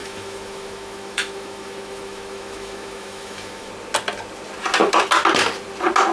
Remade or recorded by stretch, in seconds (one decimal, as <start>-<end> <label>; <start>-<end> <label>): 0.0-3.7 remade; 3.7-6.1 recorded